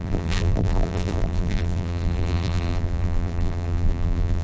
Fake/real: fake